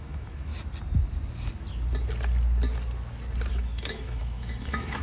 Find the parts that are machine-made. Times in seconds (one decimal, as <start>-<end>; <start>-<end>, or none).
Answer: 0.0-0.5; 3.5-5.0